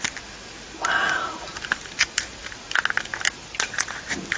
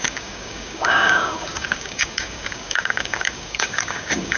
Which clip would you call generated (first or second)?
second